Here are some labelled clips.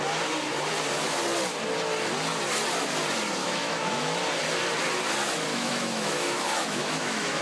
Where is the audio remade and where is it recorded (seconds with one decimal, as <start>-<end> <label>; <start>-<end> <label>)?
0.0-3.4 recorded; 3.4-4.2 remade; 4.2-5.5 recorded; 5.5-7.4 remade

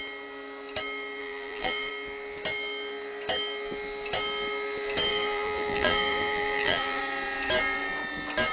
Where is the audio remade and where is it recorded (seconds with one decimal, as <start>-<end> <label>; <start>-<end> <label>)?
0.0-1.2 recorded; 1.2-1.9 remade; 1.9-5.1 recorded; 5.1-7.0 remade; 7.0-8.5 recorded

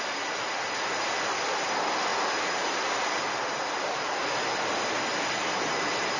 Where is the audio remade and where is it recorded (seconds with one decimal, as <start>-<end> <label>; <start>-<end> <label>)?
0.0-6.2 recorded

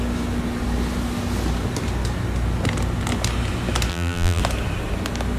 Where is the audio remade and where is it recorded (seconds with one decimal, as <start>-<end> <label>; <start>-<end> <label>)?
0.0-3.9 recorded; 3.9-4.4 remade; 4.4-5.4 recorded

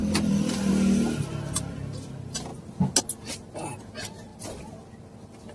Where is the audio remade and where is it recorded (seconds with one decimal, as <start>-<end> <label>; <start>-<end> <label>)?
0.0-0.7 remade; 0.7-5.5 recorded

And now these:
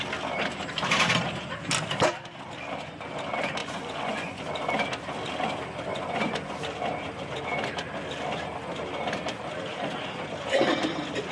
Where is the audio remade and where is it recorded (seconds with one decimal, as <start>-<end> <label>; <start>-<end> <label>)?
0.0-3.6 recorded; 3.6-4.4 remade; 4.4-5.9 recorded; 5.9-6.5 remade; 6.5-11.3 recorded